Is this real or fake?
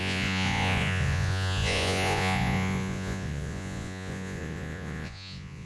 fake